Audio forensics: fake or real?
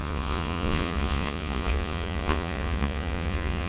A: fake